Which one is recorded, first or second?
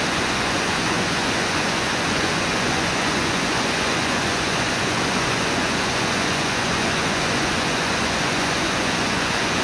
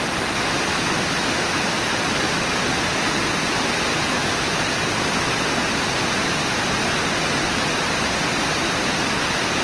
second